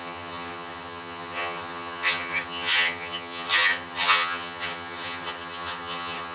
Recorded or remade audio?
remade